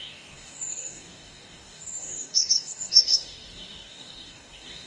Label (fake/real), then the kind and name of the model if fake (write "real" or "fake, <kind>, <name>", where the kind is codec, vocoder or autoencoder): fake, codec, DAC